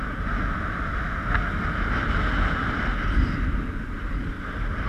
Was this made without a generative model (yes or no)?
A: yes